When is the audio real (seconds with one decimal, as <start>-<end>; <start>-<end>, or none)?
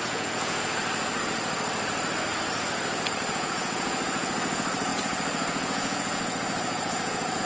0.8-3.3